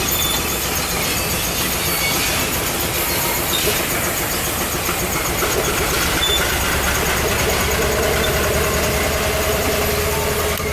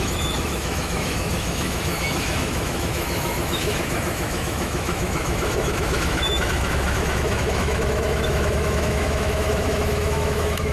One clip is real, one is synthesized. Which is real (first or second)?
first